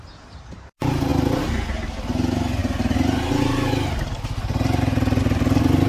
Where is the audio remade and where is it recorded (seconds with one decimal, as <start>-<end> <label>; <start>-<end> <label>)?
0.0-5.9 recorded